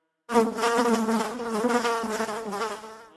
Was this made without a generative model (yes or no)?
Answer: yes